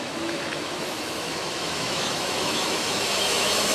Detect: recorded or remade remade